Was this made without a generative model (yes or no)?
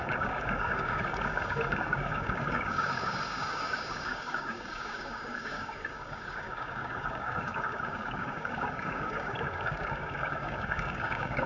no